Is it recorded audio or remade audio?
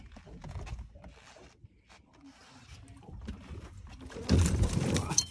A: recorded